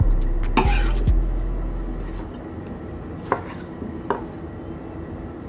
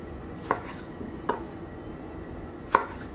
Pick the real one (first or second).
first